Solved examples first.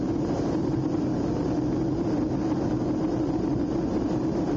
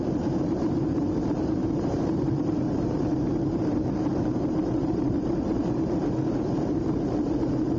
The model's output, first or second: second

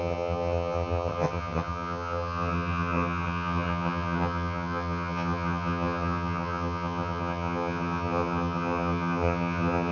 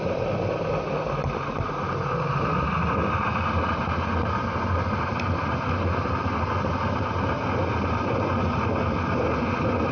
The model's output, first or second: first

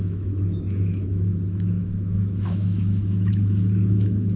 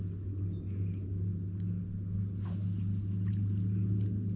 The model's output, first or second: first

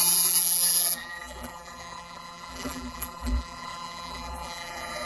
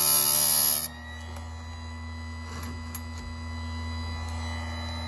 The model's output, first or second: first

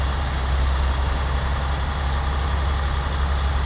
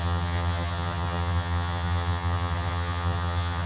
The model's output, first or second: second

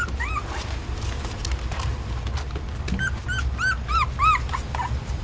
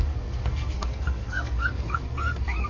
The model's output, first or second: second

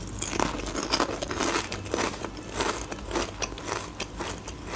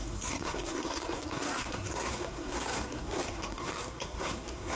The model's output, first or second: second